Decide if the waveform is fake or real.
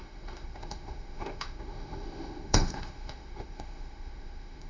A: fake